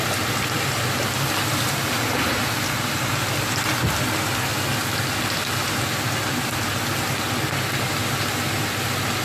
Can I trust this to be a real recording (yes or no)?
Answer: yes